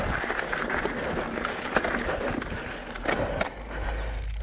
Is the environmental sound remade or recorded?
recorded